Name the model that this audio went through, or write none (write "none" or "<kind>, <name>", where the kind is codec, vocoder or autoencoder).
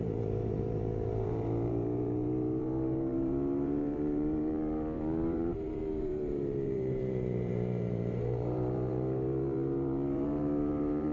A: vocoder, BigVGAN v2